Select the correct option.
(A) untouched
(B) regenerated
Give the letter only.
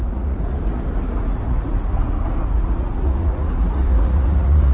B